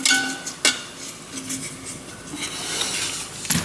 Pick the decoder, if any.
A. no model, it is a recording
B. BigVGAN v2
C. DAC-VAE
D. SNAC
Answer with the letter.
A